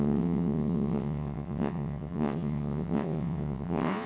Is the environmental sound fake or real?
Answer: fake